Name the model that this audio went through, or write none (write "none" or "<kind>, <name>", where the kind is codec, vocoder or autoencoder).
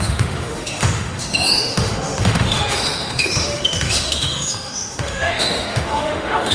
autoencoder, DAC-VAE